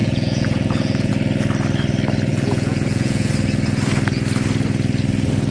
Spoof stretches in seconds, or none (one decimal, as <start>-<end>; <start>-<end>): 0.0-1.1; 2.3-3.3